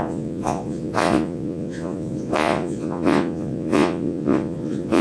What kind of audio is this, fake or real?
fake